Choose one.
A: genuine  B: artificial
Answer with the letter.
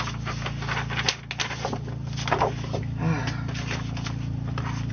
A